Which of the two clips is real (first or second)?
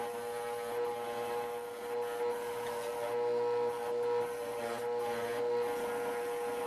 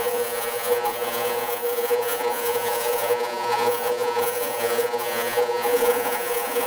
first